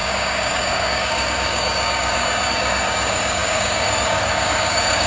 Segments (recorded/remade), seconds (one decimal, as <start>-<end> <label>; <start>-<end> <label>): 0.0-5.1 remade